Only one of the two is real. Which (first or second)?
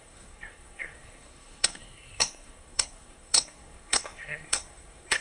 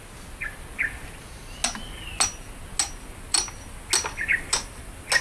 second